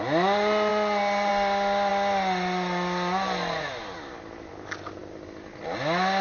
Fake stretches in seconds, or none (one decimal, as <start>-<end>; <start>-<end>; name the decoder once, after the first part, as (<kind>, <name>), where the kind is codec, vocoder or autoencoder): none

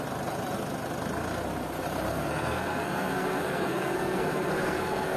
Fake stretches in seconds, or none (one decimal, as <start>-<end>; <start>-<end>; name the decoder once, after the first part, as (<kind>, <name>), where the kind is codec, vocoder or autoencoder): 2.1-5.2 (codec, SNAC)

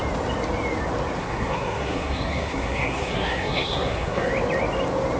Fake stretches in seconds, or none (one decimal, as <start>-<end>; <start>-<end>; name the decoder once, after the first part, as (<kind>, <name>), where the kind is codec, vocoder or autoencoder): 1.2-4.3 (codec, SNAC)